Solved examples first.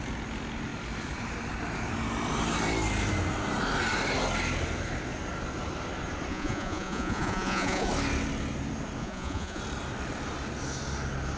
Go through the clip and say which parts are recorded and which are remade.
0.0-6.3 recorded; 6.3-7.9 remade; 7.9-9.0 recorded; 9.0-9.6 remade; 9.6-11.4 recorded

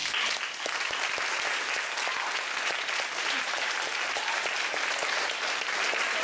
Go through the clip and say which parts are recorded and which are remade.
0.0-3.4 recorded; 3.4-4.5 remade; 4.5-6.2 recorded

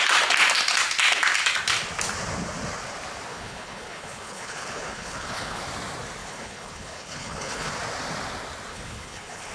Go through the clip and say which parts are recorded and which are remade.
0.0-3.3 recorded; 3.3-5.6 remade; 5.6-6.2 recorded; 6.2-7.7 remade; 7.7-8.7 recorded; 8.7-9.5 remade

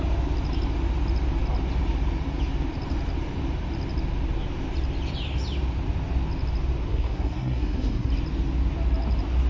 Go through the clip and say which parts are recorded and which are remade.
0.0-6.9 recorded; 6.9-8.1 remade; 8.1-9.5 recorded